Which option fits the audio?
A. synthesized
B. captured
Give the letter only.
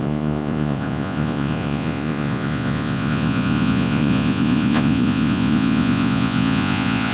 A